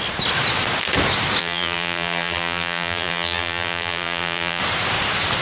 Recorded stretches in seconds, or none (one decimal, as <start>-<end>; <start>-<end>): 0.0-1.4; 4.6-5.4